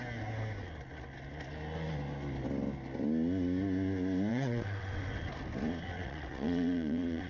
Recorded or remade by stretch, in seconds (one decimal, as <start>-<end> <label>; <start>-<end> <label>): 0.0-4.3 recorded; 4.3-5.0 remade; 5.0-5.9 recorded; 5.9-7.3 remade